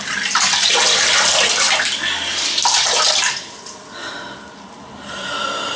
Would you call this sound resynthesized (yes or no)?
no